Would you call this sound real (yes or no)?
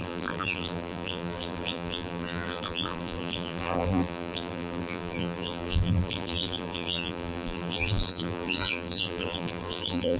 no